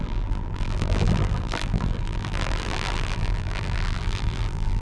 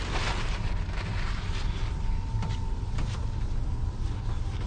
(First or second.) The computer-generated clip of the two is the first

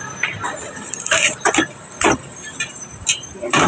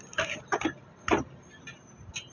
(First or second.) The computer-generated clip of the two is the first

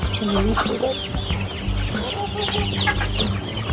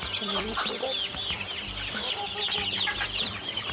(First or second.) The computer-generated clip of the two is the second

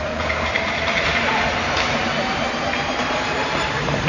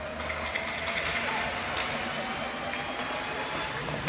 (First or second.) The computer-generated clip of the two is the first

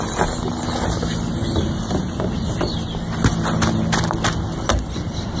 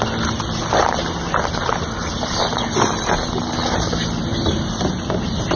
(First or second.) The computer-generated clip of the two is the second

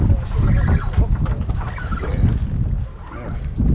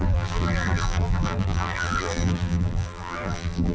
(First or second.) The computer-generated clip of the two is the second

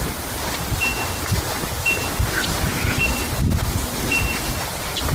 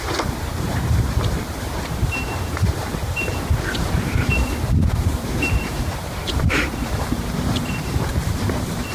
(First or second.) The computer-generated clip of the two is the second